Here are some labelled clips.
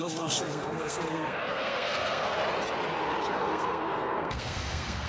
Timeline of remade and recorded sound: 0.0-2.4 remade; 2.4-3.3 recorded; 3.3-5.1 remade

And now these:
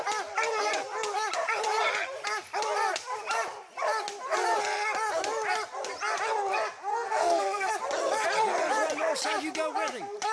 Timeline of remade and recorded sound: 0.0-6.9 recorded; 6.9-7.7 remade; 7.7-10.3 recorded

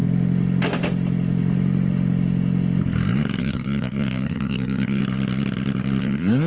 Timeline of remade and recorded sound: 0.0-3.4 recorded; 3.4-5.0 remade; 5.0-6.0 recorded; 6.0-6.5 remade